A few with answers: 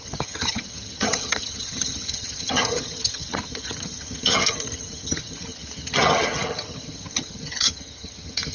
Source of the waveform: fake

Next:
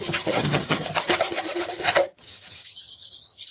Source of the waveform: fake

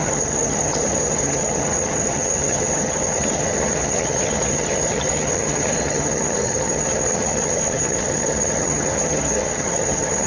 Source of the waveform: fake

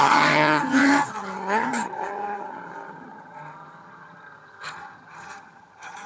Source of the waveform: fake